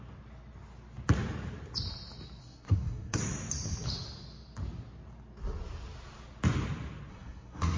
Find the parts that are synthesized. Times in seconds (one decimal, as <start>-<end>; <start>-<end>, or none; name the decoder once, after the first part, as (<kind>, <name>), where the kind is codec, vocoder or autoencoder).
2.4-3.2 (codec, SNAC); 7.1-7.8